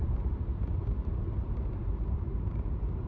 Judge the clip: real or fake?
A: fake